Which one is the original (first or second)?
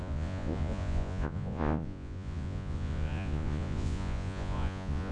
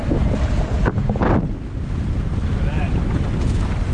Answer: second